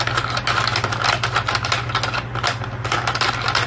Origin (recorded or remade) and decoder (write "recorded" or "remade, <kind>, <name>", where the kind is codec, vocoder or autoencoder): recorded